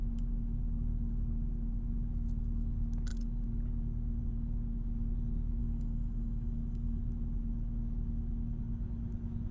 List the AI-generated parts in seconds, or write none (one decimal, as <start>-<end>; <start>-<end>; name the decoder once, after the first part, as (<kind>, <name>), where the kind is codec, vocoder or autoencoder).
5.6-7.0 (codec, DAC)